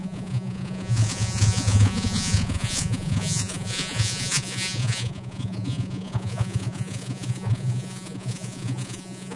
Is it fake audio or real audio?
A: fake